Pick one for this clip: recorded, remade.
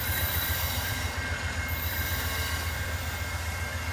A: remade